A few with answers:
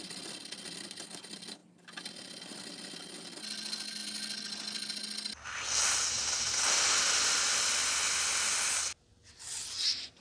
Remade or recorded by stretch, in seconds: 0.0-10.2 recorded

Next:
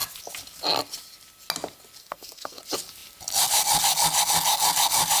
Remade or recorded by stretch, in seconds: 0.0-2.0 recorded; 2.0-2.6 remade; 2.6-5.2 recorded

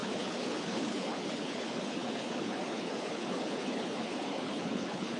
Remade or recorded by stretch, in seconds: 0.0-5.2 remade

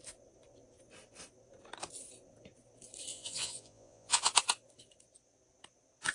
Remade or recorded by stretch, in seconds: 0.0-3.1 recorded; 3.1-4.3 remade; 4.3-6.1 recorded

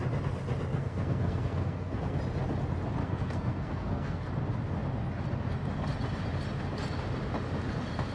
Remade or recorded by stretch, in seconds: 0.0-0.7 recorded; 0.7-2.2 remade; 2.2-3.0 recorded; 3.0-4.3 remade; 4.3-8.1 recorded

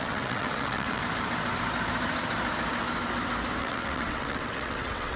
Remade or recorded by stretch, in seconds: 0.0-1.0 remade; 1.0-3.6 recorded; 3.6-5.2 remade